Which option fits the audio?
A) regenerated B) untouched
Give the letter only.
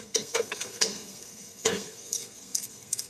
A